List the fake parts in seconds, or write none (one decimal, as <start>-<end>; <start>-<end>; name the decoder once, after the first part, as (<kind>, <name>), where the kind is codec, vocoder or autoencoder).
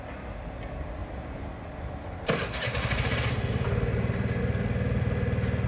1.0-4.4 (vocoder, BigVGAN v2)